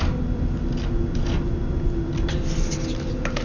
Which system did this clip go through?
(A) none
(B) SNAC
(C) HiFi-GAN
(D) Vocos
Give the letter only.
A